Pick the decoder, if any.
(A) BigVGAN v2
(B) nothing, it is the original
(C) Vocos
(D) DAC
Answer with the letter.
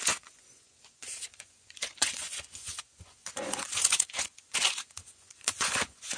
C